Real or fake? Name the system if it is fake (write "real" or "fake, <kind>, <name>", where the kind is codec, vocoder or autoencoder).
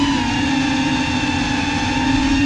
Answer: real